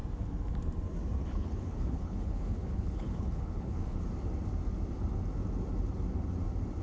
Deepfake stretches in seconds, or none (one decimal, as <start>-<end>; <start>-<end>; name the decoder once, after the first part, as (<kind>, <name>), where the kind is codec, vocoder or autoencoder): 1.2-4.0 (codec, HILCodec)